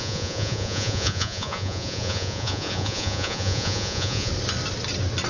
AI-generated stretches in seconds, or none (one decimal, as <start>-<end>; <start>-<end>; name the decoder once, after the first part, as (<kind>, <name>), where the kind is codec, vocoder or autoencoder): 0.0-4.3 (vocoder, Vocos)